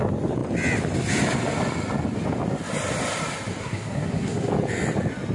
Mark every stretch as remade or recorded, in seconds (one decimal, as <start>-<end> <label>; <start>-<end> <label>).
0.0-3.6 recorded; 3.6-4.5 remade; 4.5-5.3 recorded